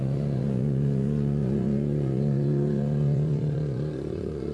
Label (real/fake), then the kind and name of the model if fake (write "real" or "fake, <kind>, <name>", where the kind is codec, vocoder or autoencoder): fake, vocoder, Vocos